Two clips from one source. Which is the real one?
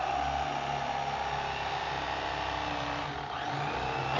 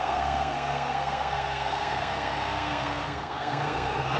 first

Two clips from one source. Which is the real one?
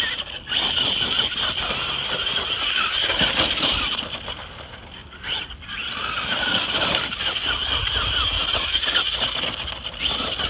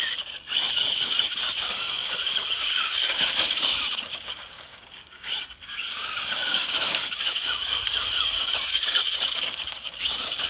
first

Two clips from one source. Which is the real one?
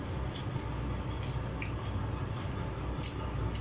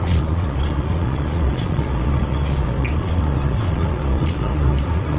first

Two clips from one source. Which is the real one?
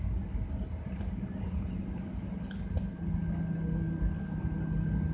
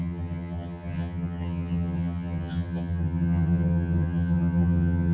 first